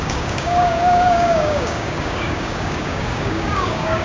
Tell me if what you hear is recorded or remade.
remade